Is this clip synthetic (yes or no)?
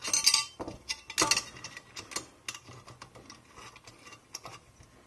no